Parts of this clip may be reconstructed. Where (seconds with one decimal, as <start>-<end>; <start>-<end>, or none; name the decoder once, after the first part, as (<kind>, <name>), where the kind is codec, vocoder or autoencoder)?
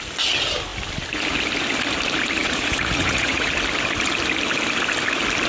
2.4-3.5 (vocoder, Vocos)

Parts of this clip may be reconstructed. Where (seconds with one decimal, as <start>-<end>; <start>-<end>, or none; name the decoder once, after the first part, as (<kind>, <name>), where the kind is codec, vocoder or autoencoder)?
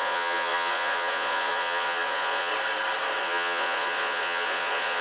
0.0-2.5 (vocoder, Vocos); 3.2-5.0